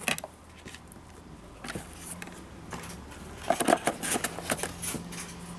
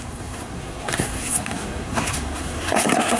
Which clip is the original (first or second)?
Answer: first